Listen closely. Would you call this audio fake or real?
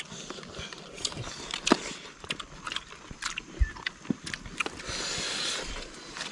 real